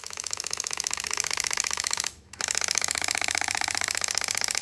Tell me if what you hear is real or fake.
fake